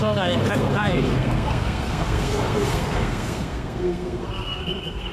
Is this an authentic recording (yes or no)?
no